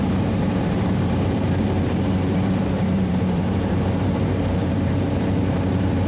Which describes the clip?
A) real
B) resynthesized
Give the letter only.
B